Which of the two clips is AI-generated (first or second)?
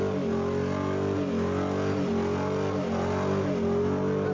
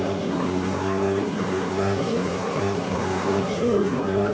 second